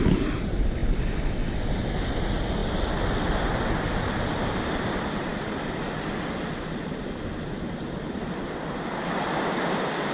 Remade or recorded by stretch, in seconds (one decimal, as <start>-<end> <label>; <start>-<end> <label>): 0.0-10.1 recorded